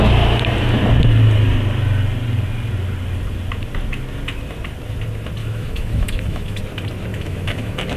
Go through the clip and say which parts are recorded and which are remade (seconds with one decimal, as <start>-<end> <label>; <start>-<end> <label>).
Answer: 0.0-5.4 recorded; 5.4-6.6 remade; 6.6-7.1 recorded; 7.1-8.0 remade